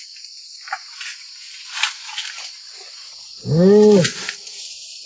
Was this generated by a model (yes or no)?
no